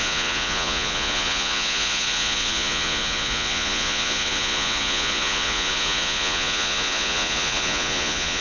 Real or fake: fake